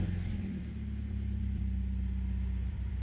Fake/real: fake